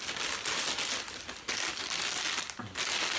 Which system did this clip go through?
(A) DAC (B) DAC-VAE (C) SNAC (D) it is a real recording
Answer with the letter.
D